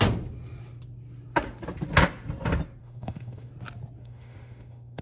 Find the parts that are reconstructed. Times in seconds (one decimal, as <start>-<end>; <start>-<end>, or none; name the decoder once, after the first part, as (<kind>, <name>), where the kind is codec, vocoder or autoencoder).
2.8-3.5 (autoencoder, DAC-VAE); 4.0-5.0

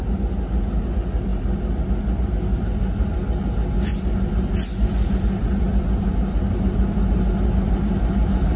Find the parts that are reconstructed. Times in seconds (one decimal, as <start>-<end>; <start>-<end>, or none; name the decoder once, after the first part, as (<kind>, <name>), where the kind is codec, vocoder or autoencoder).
none

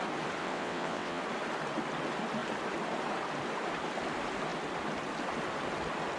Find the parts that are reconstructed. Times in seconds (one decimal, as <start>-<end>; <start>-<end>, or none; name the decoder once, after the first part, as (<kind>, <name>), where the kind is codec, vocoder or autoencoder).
0.4-1.2 (vocoder, WaveNeXt)